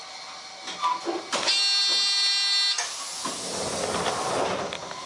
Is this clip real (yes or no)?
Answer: yes